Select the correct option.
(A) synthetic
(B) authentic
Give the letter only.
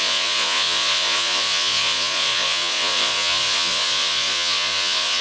A